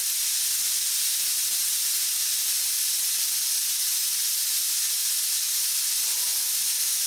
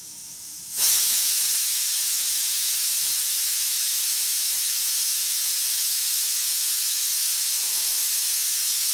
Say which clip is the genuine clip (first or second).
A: first